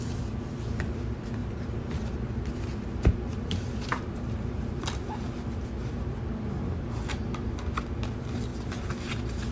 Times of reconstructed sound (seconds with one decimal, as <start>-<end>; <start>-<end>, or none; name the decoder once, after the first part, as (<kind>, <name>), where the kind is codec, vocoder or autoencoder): 1.4-1.9 (vocoder, BigVGAN v2); 3.3-5.6